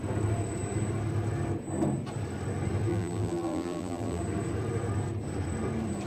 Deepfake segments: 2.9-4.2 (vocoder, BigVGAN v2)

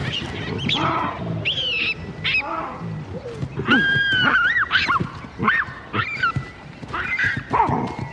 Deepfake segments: 0.0-1.1 (vocoder, BigVGAN v2)

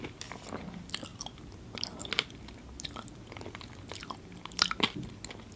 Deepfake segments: none

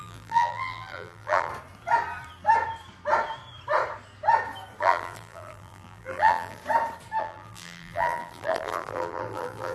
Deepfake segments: 0.0-1.5 (vocoder, BigVGAN v2); 4.8-6.6; 7.2-9.7

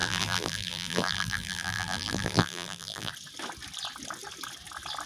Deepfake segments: 0.0-3.1 (vocoder, BigVGAN v2)

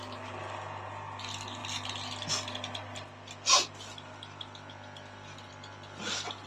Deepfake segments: none